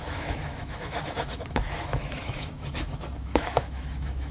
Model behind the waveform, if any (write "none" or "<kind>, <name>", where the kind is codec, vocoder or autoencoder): autoencoder, DAC-VAE